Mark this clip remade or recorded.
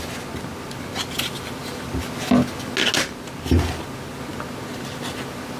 recorded